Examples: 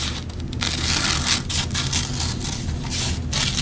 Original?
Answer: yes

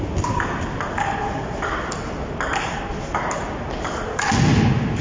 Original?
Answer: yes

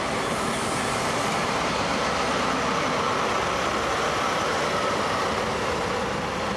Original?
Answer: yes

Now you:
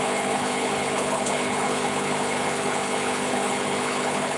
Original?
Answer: no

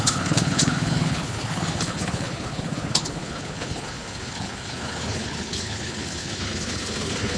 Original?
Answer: no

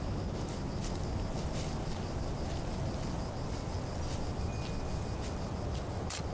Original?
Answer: yes